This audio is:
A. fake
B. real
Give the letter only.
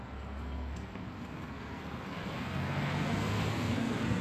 A